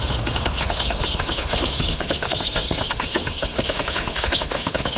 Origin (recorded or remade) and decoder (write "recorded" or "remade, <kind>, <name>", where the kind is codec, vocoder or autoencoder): remade, autoencoder, DAC-VAE